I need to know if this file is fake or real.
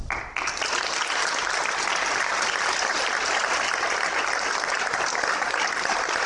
real